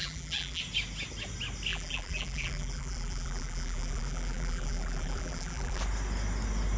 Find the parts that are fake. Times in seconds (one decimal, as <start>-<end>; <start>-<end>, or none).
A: 0.0-0.6; 1.7-5.8